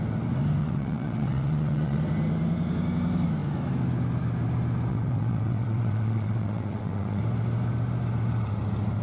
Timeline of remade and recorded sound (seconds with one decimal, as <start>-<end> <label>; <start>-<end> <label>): 0.0-0.6 recorded; 0.6-2.0 remade; 2.0-4.9 recorded; 4.9-7.2 remade; 7.2-9.0 recorded